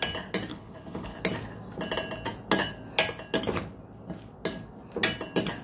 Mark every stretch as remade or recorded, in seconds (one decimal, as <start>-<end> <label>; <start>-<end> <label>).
0.0-0.5 recorded; 0.5-1.2 remade; 1.2-5.6 recorded